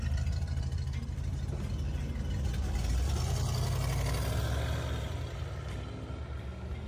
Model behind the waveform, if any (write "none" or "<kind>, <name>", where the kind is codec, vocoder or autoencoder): none